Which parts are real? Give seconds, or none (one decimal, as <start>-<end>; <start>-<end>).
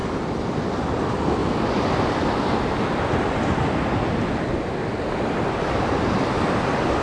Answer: 0.0-7.0